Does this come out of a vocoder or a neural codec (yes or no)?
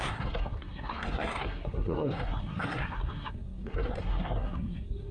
yes